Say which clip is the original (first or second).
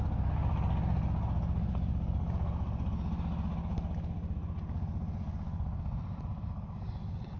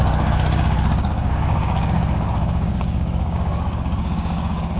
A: first